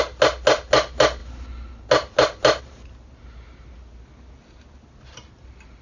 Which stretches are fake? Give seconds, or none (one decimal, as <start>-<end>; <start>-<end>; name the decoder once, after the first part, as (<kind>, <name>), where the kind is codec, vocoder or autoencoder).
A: none